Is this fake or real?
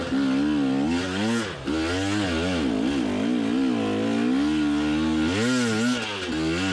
real